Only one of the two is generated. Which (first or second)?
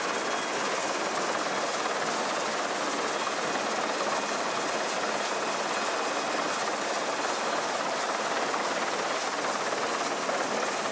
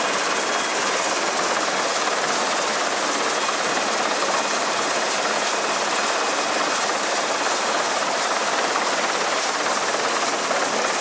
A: second